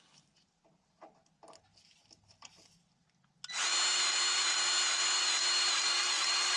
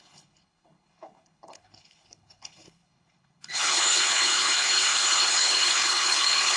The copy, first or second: second